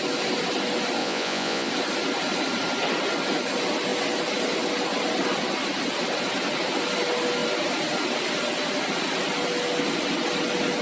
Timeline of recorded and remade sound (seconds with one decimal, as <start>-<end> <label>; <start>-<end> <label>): 0.0-1.0 recorded; 1.0-1.7 remade; 1.7-10.8 recorded